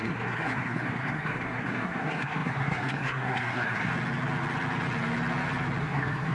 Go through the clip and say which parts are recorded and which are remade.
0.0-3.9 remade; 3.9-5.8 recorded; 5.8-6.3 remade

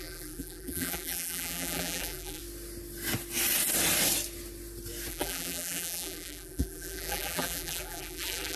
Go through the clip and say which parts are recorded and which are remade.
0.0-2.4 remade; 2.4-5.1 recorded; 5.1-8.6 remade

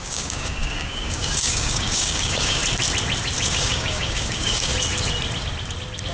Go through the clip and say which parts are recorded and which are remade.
0.0-2.6 remade; 2.6-3.5 recorded; 3.5-4.7 remade; 4.7-6.1 recorded

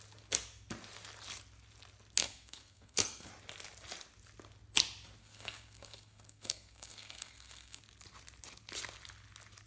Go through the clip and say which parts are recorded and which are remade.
0.0-2.2 recorded; 2.2-3.3 remade; 3.3-5.2 recorded; 5.2-7.8 remade; 7.8-9.7 recorded

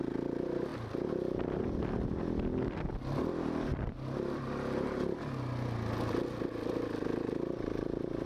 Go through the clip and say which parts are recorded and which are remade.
0.0-8.3 recorded